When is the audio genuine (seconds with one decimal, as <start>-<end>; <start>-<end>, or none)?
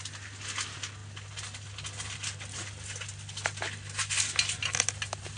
0.0-5.4